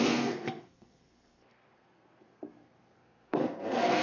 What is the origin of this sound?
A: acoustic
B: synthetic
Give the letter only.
B